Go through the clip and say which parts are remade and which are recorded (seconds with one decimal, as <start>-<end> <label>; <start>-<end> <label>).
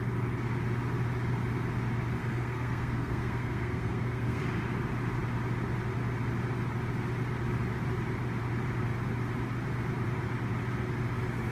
0.0-2.2 recorded; 2.2-4.4 remade; 4.4-11.5 recorded